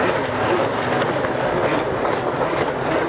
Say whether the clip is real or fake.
real